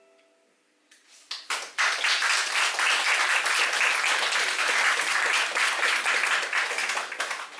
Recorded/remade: recorded